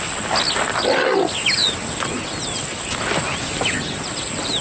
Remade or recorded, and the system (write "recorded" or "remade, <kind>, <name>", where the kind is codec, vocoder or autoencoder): recorded